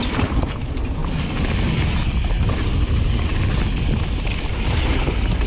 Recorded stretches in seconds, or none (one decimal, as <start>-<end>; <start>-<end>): 1.0-2.8; 3.3-4.5